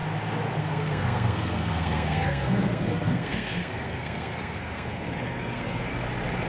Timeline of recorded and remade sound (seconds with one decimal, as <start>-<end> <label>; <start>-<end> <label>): 0.0-0.6 recorded; 0.6-5.9 remade; 5.9-6.5 recorded